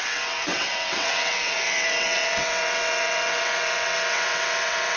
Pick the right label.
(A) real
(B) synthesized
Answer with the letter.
B